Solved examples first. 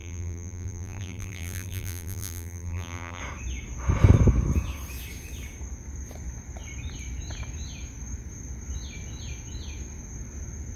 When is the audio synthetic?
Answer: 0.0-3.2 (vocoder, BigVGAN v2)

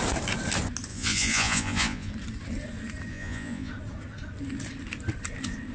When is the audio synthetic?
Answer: 0.9-2.1 (vocoder, Vocos); 3.1-3.7

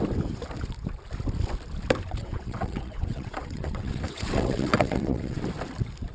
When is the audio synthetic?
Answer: 2.2-5.4 (vocoder, WaveNeXt)

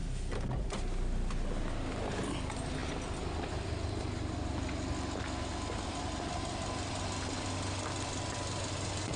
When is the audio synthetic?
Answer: none

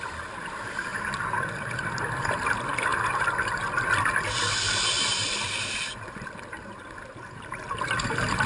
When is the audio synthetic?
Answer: none